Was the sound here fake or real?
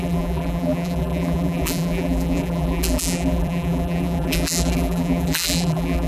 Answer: fake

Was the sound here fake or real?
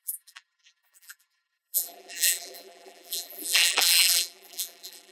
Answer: fake